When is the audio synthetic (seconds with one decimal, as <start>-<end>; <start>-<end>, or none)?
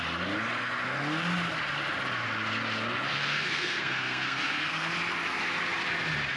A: 3.1-4.9